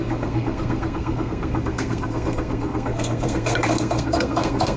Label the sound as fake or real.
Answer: fake